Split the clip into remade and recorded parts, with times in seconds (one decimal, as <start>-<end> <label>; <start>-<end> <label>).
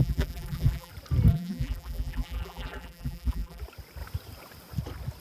0.0-0.9 remade; 0.9-1.3 recorded; 1.3-3.6 remade; 3.6-5.2 recorded